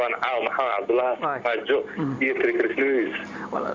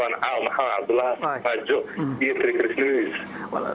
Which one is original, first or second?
first